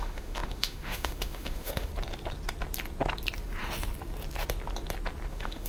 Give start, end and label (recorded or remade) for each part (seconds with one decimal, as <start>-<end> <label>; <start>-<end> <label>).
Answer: 0.0-1.9 remade; 1.9-5.3 recorded; 5.3-5.7 remade